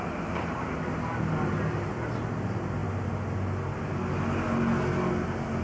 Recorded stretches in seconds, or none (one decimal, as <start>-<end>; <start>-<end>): 0.0-5.6